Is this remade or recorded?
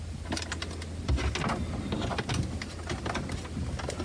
recorded